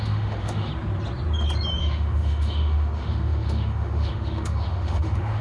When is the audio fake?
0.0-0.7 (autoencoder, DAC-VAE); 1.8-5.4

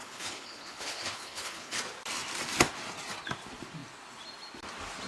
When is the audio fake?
0.0-1.8 (codec, HILCodec)